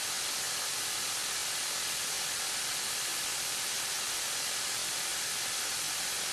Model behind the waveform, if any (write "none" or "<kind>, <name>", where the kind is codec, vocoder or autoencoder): vocoder, BigVGAN v2